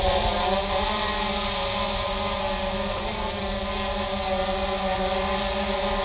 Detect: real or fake real